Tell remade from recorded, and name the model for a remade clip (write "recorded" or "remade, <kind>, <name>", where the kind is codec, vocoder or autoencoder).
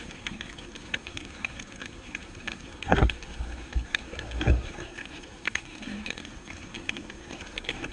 remade, codec, SNAC